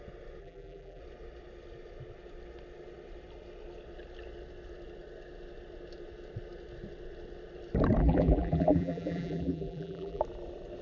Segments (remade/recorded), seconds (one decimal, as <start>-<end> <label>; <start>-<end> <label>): 0.0-0.4 recorded; 0.4-1.0 remade; 1.0-8.0 recorded; 8.0-10.2 remade; 10.2-10.8 recorded